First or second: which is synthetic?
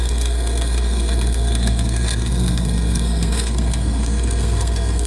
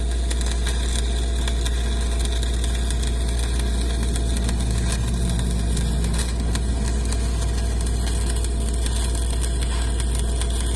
first